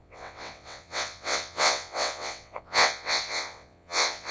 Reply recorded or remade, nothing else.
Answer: remade